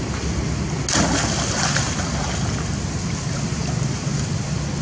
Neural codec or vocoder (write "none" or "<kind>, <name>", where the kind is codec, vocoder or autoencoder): none